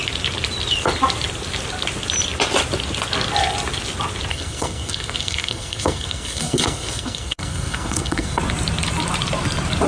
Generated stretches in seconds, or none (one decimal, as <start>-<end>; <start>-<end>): 4.3-8.4